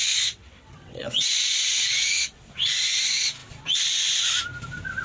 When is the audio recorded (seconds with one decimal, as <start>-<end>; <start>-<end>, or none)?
2.5-5.0